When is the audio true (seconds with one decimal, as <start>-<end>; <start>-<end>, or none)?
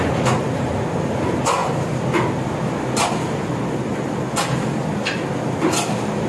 0.0-6.3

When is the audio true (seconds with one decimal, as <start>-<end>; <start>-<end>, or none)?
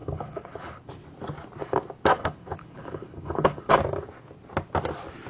0.9-2.2; 3.7-5.3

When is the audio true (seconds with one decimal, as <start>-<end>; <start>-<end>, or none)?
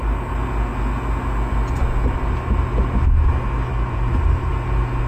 0.0-3.7; 4.5-5.1